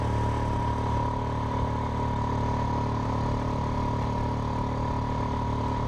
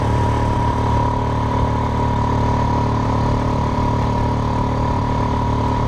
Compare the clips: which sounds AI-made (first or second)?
second